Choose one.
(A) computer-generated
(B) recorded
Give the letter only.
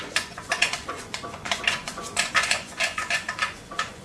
A